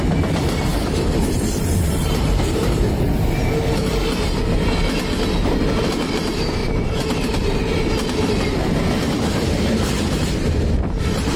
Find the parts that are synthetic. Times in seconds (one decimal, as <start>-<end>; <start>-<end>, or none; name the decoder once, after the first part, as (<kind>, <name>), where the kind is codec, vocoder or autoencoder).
0.7-2.8 (vocoder, BigVGAN v2); 6.6-7.9